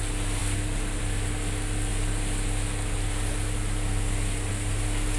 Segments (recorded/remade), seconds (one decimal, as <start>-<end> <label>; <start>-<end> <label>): 0.0-5.2 recorded